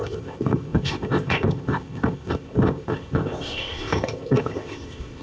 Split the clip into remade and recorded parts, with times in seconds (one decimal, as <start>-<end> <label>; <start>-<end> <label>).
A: 0.0-5.2 remade